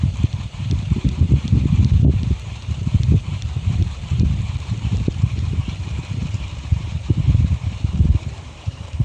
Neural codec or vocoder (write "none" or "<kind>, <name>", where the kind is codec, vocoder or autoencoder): vocoder, BigVGAN v2